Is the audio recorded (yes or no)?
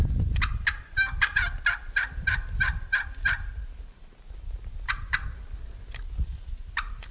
yes